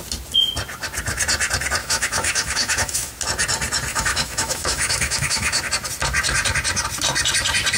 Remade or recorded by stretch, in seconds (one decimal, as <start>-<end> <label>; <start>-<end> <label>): 0.0-1.8 recorded; 1.8-3.1 remade; 3.1-3.9 recorded; 3.9-5.6 remade; 5.6-7.8 recorded